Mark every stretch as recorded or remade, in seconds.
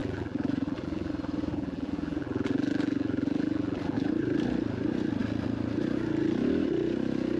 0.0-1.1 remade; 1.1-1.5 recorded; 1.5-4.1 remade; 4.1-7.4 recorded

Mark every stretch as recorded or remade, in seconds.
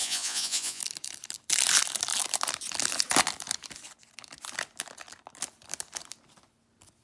0.0-0.8 remade; 0.8-7.0 recorded